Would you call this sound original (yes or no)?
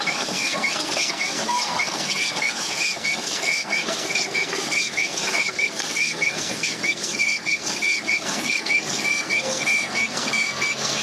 no